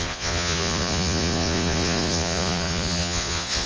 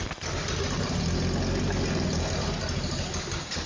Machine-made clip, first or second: first